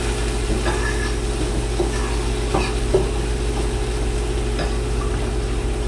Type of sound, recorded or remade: recorded